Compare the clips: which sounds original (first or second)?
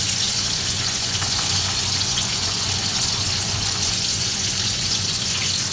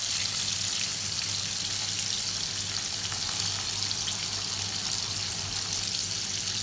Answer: second